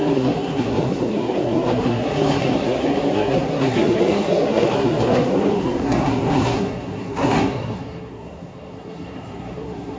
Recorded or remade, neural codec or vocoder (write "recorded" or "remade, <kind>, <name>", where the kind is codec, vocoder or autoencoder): remade, codec, SNAC